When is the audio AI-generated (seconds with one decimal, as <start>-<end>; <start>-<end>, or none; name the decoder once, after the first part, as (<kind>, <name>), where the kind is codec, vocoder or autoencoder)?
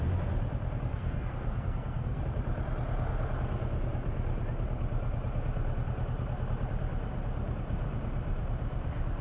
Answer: 0.9-2.2 (codec, SNAC)